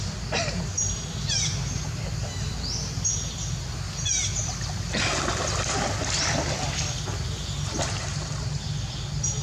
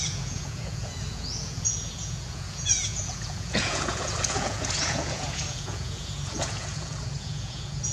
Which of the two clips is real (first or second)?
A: first